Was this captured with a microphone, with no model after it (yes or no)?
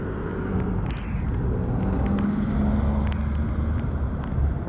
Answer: yes